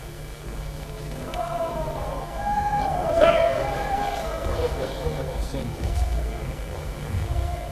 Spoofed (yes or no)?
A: yes